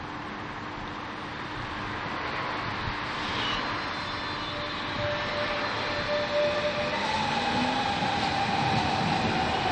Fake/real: real